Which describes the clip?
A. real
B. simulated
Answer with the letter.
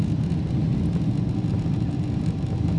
A